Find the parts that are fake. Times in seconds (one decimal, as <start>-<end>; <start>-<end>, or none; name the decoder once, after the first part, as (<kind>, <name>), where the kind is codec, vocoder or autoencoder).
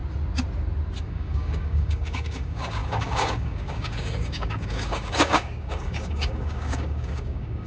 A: 1.0-7.7 (codec, DAC)